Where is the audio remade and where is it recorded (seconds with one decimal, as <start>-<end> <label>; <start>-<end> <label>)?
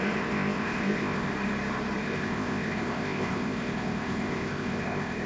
0.0-1.3 remade; 1.3-2.0 recorded; 2.0-5.3 remade